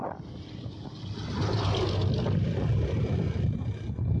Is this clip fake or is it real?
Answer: real